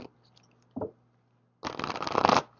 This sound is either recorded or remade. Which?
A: recorded